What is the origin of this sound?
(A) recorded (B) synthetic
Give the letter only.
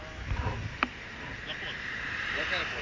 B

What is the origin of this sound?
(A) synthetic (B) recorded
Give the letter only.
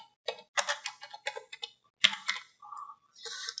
B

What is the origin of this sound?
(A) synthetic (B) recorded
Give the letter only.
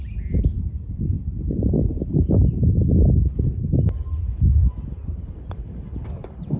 B